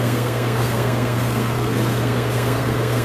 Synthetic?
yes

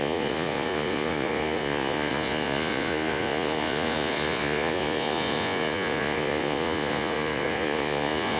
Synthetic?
yes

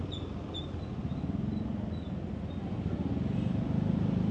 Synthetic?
no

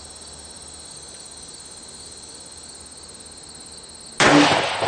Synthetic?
no